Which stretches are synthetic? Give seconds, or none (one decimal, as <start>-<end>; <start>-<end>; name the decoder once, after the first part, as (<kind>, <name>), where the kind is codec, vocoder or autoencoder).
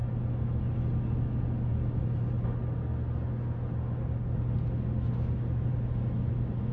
none